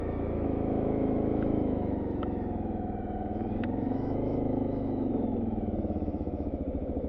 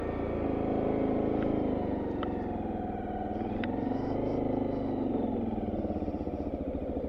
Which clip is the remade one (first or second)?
first